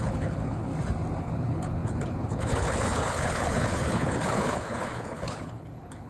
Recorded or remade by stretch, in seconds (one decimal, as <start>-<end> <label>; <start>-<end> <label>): 0.0-0.7 remade; 0.7-1.2 recorded; 1.2-6.1 remade